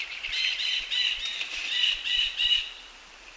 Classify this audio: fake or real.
fake